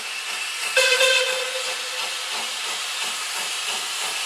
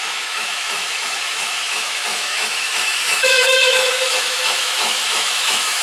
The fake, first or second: second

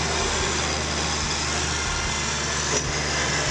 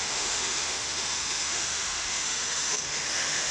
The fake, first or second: second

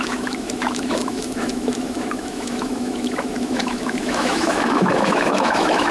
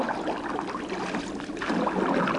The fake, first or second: first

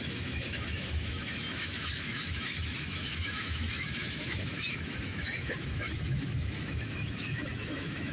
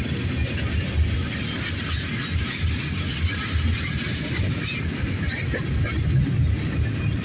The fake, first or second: first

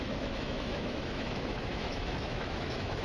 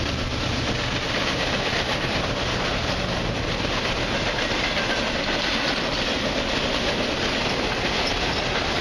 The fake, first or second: first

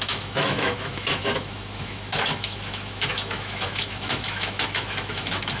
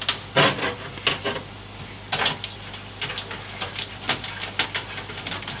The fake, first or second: first